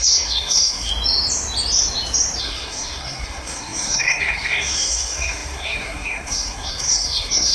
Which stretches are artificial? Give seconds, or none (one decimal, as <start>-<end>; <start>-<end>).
0.0-0.9; 2.4-7.5